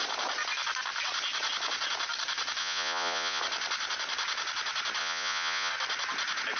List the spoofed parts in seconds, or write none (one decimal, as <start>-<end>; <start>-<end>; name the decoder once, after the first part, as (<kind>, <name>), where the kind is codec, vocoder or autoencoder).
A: 2.6-3.4 (vocoder, Vocos); 5.0-5.7